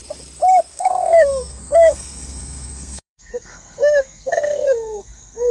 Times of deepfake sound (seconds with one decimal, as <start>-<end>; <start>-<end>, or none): 0.7-5.5